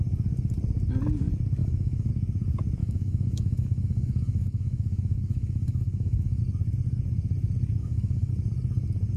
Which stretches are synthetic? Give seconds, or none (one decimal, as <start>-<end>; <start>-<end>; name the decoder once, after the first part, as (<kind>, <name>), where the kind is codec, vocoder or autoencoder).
1.6-2.1 (autoencoder, DAC-VAE); 2.8-6.4; 7.8-8.3

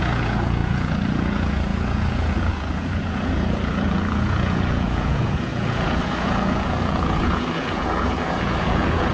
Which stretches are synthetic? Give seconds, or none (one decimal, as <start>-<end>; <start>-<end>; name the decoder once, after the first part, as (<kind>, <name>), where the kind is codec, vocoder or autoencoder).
0.0-9.1 (vocoder, Vocos)

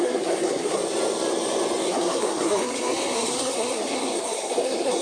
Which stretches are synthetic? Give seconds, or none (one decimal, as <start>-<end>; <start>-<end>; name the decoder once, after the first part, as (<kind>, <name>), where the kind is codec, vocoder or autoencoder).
0.0-0.8 (codec, SNAC); 1.8-5.0

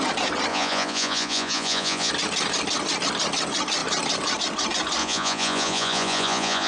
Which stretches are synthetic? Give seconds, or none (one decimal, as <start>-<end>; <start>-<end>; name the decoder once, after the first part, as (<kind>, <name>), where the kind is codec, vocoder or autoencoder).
0.5-2.1 (vocoder, Vocos); 5.0-6.7

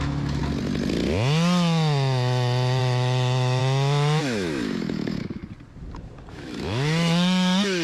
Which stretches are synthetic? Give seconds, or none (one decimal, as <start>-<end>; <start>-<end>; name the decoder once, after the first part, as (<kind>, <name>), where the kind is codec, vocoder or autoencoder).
0.0-0.4 (autoencoder, DAC-VAE); 2.8-3.6; 4.2-5.4; 6.3-7.8

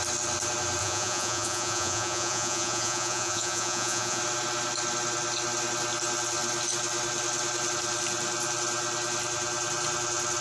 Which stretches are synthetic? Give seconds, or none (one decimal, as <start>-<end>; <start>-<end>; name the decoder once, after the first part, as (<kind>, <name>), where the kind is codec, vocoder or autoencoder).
0.8-4.2 (vocoder, Vocos)

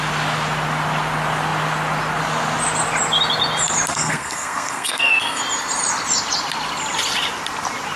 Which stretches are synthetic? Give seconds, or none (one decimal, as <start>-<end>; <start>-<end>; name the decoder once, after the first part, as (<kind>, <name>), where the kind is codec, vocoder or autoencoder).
3.9-5.4 (codec, SNAC)